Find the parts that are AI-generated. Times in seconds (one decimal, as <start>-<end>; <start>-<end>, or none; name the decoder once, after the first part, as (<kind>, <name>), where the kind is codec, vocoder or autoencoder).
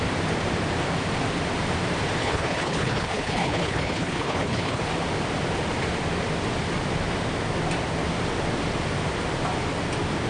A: 2.2-4.8 (codec, HILCodec)